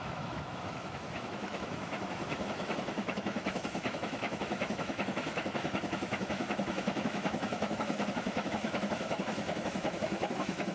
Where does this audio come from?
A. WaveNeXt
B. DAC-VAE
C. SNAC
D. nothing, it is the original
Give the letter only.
B